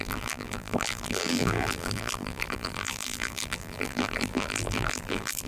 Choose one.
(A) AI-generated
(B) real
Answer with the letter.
A